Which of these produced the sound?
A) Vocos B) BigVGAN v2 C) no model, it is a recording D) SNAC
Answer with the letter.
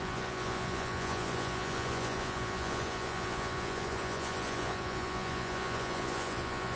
A